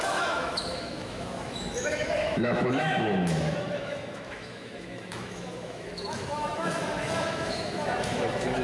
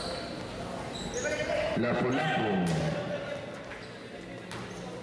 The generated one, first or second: first